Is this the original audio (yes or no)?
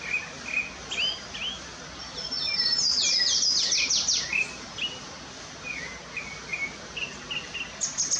yes